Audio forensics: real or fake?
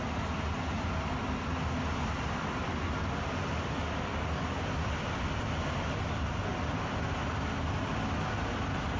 real